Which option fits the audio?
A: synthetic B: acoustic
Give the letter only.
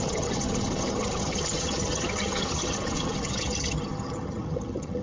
A